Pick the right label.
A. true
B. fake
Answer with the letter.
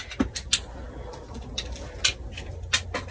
A